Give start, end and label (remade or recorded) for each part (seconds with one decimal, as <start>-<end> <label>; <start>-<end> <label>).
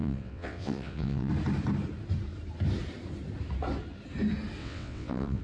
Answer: 0.0-1.3 remade; 1.3-4.6 recorded; 4.6-5.4 remade